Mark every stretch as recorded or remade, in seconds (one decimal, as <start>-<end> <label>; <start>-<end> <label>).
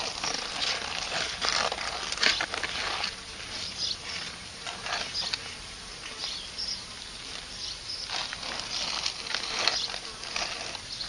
0.0-11.1 recorded